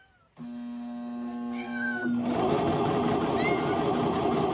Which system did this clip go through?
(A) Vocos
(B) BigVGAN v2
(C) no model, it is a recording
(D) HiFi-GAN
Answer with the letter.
C